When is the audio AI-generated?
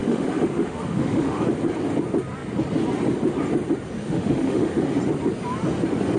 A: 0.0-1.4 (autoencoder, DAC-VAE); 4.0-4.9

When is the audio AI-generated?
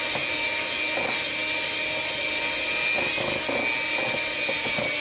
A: none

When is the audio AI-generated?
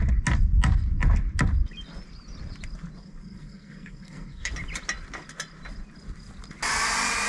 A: 3.0-4.5 (codec, SNAC)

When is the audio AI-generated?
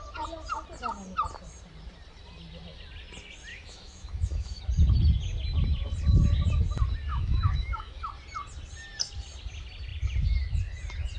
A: 3.5-4.6 (autoencoder, DAC-VAE); 7.1-8.0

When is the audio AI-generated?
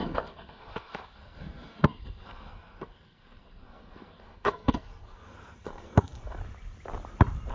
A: 0.0-6.4 (codec, SNAC)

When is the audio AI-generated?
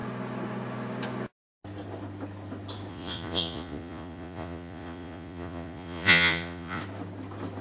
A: 2.9-6.8 (vocoder, Vocos)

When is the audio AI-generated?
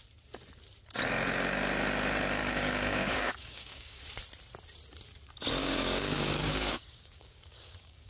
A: 2.4-4.0 (codec, DAC); 5.6-8.1